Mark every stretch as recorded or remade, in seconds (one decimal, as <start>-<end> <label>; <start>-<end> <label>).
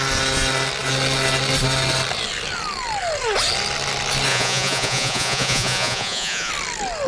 0.0-4.3 recorded; 4.3-6.5 remade; 6.5-7.1 recorded